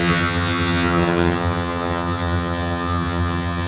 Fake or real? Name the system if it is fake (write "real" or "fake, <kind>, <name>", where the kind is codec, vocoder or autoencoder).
fake, vocoder, HiFi-GAN